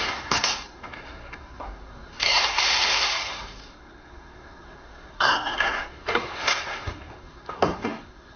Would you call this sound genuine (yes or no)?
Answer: no